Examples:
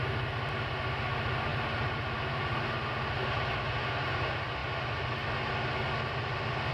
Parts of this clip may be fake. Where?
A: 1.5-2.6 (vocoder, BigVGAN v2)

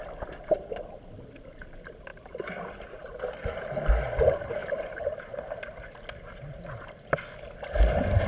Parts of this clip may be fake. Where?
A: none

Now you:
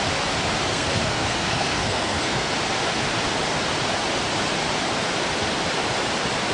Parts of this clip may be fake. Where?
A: 0.7-2.5 (codec, SNAC)